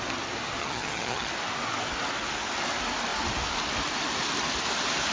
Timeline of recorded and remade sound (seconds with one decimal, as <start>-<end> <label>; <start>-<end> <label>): 0.0-0.6 recorded; 0.6-1.3 remade; 1.3-5.1 recorded